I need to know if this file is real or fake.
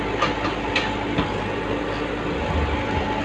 real